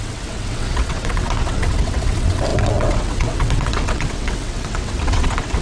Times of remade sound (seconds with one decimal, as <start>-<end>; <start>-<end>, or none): 0.0-5.6